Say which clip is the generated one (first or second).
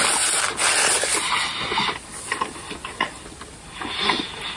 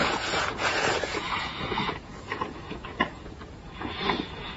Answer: second